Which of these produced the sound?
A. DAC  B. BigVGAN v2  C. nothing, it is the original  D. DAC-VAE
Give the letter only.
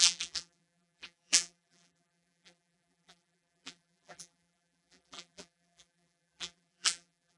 B